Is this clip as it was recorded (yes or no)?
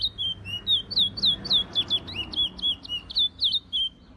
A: yes